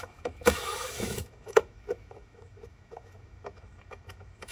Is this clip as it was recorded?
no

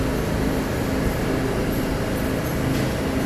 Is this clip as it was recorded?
yes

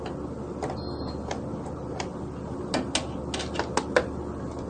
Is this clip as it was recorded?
yes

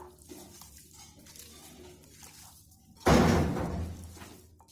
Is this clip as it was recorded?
yes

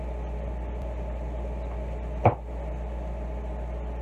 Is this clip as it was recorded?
yes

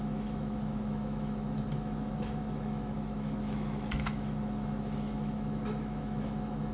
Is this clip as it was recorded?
no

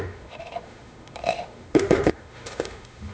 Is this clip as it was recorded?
no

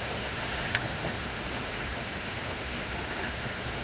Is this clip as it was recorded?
no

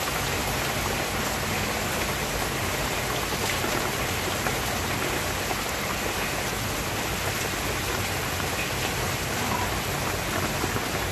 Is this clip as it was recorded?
yes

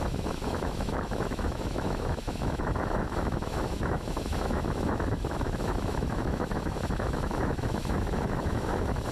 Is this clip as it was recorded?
no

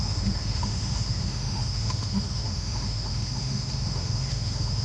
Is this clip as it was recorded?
no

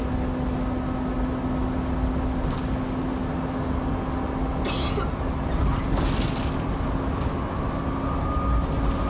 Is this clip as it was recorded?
yes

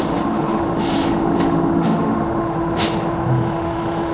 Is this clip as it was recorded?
no